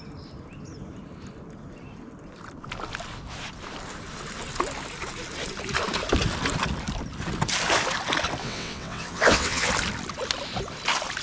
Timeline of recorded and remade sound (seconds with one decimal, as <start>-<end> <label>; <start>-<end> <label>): 0.0-8.4 recorded; 8.4-9.7 remade; 9.7-11.2 recorded